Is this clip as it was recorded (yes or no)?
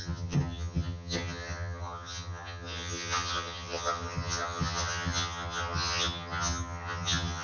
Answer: no